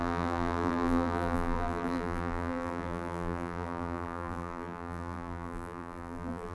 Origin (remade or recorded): remade